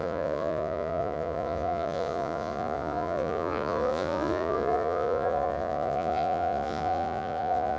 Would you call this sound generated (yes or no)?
yes